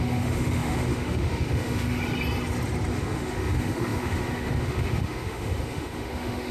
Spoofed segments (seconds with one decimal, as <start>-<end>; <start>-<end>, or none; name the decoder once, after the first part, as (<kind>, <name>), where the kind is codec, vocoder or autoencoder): 0.0-2.0 (autoencoder, DAC-VAE); 2.9-6.5